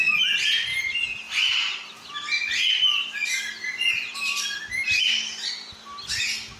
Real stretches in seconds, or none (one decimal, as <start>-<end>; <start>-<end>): 0.0-6.6